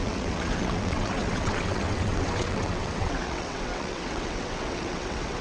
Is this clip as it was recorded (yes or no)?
no